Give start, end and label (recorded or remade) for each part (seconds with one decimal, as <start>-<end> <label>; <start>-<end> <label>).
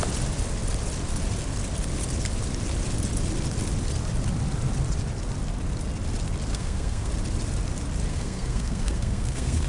0.0-6.5 recorded; 6.5-7.1 remade; 7.1-8.1 recorded; 8.1-9.7 remade